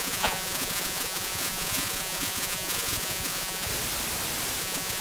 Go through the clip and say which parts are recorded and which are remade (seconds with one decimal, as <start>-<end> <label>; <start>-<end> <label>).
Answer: 0.0-3.7 remade; 3.7-4.6 recorded; 4.6-5.0 remade